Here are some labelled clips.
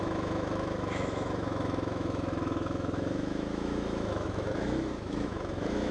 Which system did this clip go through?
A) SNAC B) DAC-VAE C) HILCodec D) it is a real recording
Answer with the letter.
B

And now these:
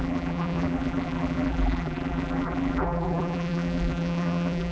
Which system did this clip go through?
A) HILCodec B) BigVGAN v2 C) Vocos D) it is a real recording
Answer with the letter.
B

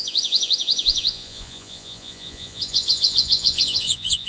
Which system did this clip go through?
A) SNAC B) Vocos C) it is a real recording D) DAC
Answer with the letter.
B